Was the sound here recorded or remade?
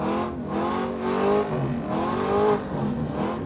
recorded